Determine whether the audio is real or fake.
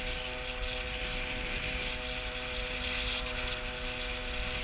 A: real